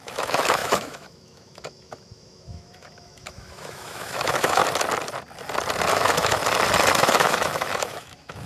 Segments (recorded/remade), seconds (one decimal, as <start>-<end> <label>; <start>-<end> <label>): 0.0-4.6 remade; 4.6-5.9 recorded; 5.9-6.4 remade; 6.4-7.0 recorded; 7.0-8.5 remade